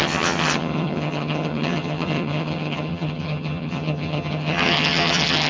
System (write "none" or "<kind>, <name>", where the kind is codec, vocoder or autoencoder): vocoder, HiFi-GAN